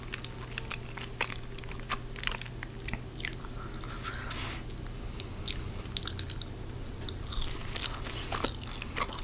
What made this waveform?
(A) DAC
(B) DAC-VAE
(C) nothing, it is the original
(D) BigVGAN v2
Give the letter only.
C